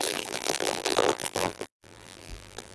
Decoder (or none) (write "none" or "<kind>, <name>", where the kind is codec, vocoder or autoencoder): vocoder, BigVGAN v2